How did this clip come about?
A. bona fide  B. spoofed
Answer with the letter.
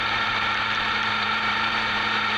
B